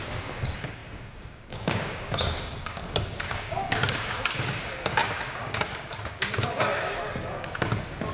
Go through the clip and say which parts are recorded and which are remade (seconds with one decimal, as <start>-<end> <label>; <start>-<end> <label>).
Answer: 0.0-8.1 remade